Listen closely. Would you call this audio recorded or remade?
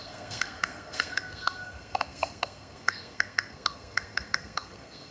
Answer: remade